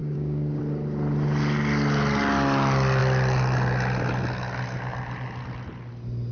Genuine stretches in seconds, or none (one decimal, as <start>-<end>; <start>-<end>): 0.6-6.3